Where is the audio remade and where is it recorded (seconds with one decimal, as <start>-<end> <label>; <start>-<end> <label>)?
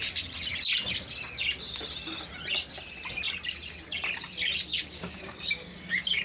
0.0-4.7 recorded; 4.7-6.2 remade